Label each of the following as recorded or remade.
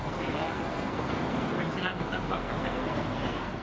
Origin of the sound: remade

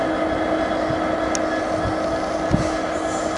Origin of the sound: recorded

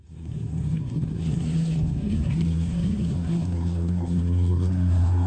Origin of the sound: remade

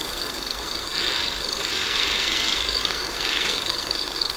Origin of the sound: remade